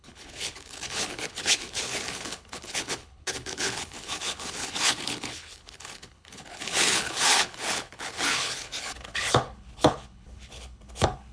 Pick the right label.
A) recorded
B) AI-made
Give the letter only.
B